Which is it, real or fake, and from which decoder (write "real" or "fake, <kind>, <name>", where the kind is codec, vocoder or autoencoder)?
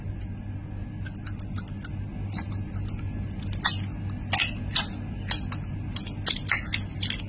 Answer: real